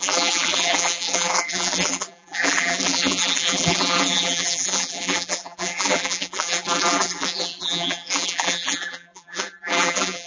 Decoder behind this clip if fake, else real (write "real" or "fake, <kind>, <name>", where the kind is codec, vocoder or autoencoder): fake, vocoder, BigVGAN v2